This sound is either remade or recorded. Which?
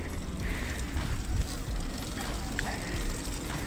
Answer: recorded